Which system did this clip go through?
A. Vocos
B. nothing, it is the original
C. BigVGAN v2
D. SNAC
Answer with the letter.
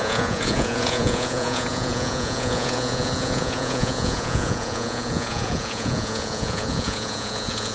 A